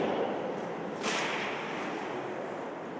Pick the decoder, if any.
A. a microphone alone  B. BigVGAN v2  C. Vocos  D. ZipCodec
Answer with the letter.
A